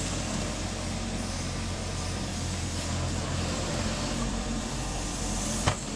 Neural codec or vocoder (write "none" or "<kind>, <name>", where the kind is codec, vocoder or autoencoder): vocoder, BigVGAN v2